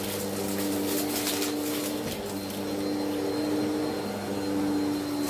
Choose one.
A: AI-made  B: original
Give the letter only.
B